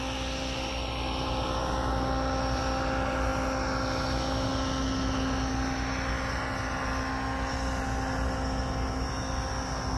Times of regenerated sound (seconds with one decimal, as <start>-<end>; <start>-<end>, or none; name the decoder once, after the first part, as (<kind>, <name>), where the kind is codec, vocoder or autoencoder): none